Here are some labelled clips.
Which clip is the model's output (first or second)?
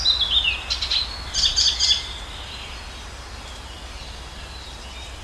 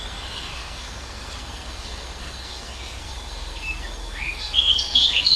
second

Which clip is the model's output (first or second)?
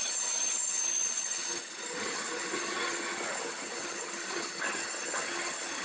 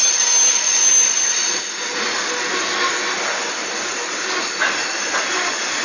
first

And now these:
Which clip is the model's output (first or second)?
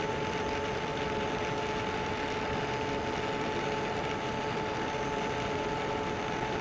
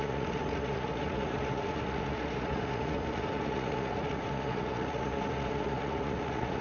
second